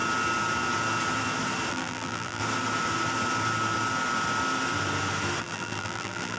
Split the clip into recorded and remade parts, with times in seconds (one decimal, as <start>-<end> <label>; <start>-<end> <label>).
0.0-1.7 recorded; 1.7-2.4 remade; 2.4-5.4 recorded; 5.4-6.4 remade